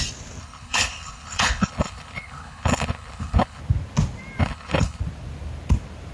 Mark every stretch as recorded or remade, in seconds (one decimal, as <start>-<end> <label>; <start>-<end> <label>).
0.0-0.4 recorded; 0.4-3.6 remade; 3.6-4.4 recorded; 4.4-5.0 remade; 5.0-6.1 recorded